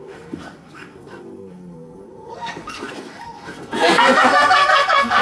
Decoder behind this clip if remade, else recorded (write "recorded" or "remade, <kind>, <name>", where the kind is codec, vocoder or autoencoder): remade, codec, SNAC